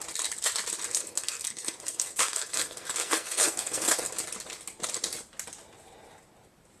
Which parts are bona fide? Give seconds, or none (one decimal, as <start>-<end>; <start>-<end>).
0.0-0.9; 4.1-6.8